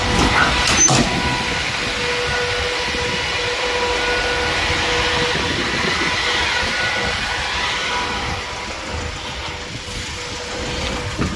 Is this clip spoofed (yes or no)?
no